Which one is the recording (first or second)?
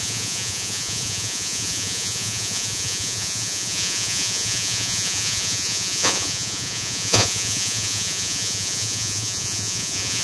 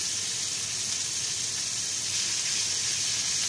second